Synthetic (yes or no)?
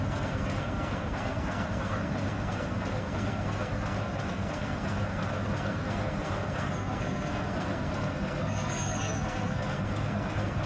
yes